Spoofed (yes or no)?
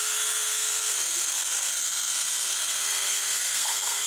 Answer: yes